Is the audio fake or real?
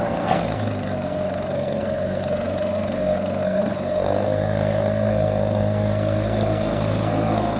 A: fake